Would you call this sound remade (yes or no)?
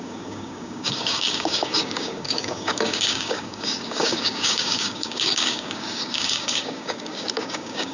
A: yes